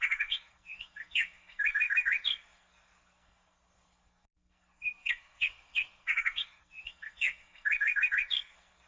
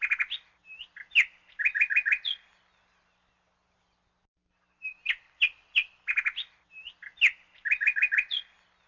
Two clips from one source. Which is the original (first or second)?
second